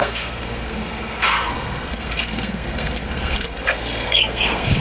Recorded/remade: remade